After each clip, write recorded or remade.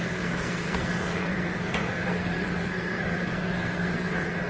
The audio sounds remade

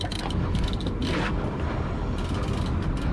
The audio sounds recorded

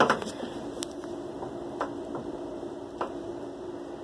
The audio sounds recorded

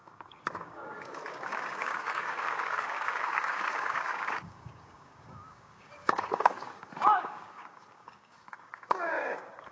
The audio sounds remade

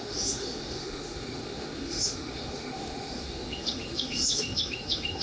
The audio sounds remade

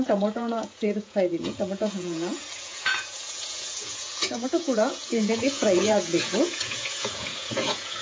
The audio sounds remade